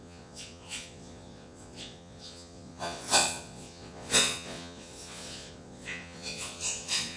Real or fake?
fake